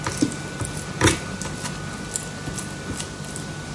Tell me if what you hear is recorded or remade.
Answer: recorded